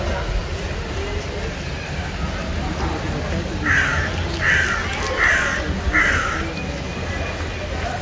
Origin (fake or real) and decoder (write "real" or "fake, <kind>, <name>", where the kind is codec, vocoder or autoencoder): real